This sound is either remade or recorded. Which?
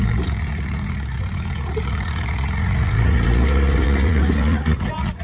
remade